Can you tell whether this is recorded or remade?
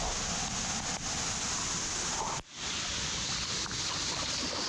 recorded